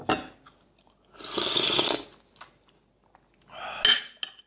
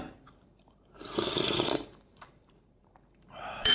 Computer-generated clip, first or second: second